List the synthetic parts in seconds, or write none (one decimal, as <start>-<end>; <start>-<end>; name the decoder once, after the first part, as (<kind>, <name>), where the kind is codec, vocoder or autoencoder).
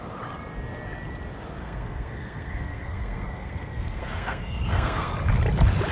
1.6-5.1 (codec, SNAC)